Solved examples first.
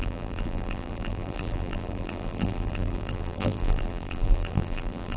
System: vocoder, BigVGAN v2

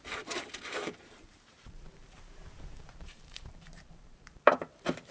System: vocoder, BigVGAN v2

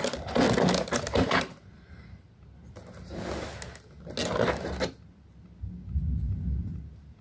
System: none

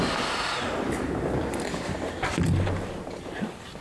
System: none